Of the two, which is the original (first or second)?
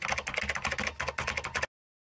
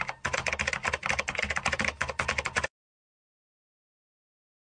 first